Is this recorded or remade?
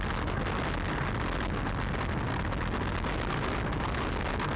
recorded